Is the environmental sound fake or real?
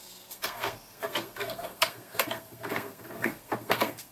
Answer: fake